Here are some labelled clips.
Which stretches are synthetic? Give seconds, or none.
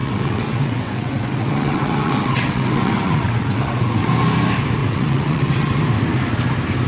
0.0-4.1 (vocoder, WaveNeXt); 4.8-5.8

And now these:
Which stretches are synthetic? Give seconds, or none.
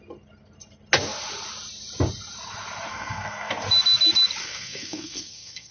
2.9-3.5 (codec, SNAC); 4.4-5.7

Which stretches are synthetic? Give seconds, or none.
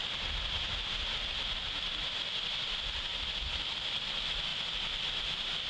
1.3-4.5 (vocoder, BigVGAN v2); 5.3-5.7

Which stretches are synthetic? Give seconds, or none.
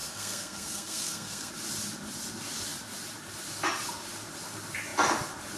0.0-1.5 (codec, SNAC)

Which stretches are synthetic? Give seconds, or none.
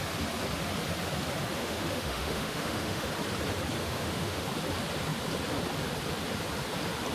1.6-3.1 (autoencoder, DAC-VAE); 3.8-4.4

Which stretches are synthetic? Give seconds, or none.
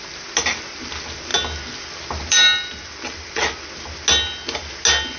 none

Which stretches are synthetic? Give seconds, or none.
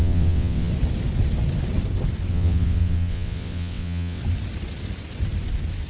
0.0-0.7 (vocoder, WaveNeXt); 2.3-4.2